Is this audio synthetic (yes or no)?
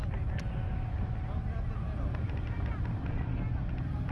no